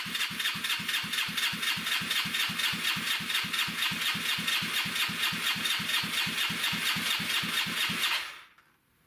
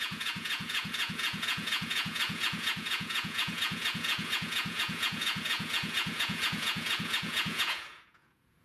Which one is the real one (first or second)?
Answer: first